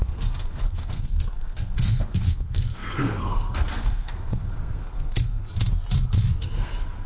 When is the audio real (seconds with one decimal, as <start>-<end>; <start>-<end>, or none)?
5.4-6.4